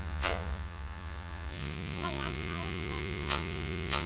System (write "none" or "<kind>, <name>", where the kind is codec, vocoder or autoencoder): vocoder, Vocos